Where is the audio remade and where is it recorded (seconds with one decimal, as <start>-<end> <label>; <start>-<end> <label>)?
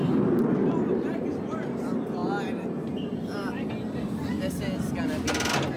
0.0-5.8 recorded